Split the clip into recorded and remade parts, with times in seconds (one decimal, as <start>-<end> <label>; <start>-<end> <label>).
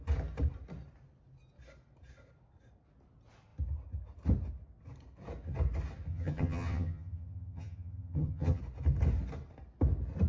0.0-6.1 recorded; 6.1-8.6 remade; 8.6-10.3 recorded